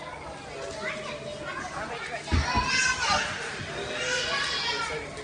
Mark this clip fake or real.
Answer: real